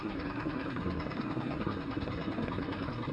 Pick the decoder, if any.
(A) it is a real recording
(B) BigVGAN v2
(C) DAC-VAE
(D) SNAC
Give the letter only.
D